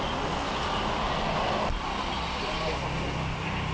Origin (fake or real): real